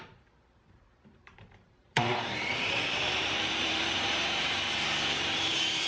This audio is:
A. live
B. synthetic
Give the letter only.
B